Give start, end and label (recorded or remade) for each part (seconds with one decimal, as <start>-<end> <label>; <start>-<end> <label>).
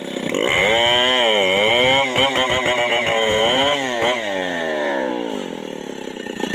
0.0-2.9 recorded; 2.9-5.1 remade; 5.1-6.5 recorded